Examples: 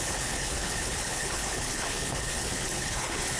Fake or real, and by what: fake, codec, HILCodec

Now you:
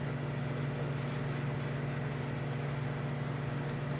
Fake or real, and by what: real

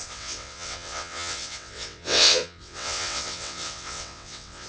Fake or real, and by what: fake, vocoder, WaveNeXt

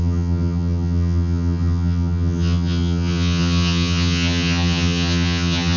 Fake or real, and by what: fake, vocoder, HiFi-GAN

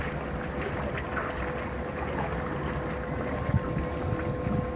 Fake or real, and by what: real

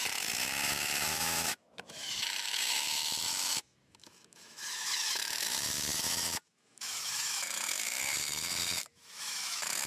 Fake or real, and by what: fake, autoencoder, DAC-VAE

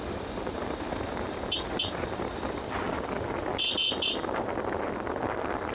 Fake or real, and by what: real